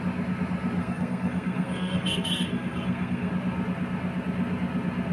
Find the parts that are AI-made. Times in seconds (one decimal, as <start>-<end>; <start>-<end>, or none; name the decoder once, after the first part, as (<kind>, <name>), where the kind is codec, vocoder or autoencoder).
0.8-3.3 (codec, SNAC)